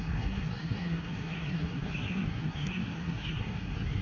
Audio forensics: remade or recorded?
remade